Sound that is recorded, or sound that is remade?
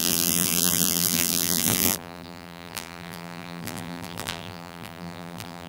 remade